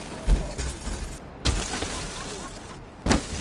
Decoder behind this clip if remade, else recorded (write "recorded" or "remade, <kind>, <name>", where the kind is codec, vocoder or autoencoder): recorded